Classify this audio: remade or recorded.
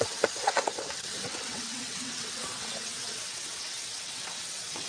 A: remade